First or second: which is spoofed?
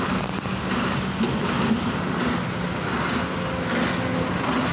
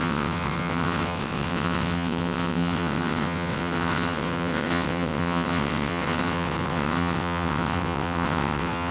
second